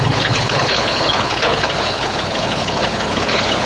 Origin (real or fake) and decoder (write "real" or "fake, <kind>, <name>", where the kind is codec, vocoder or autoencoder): fake, codec, HILCodec